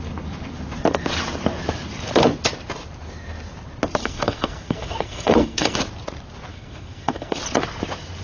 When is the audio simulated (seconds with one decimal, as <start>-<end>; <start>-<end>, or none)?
4.0-5.8; 6.5-7.4